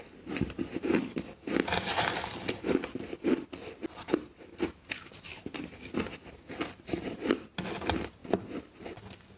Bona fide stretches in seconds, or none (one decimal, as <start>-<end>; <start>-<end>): 0.0-9.4